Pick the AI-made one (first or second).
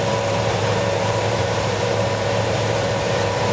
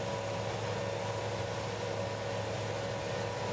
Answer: first